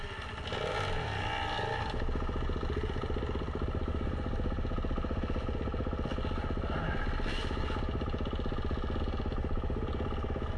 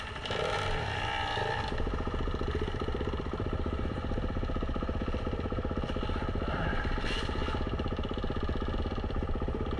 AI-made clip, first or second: second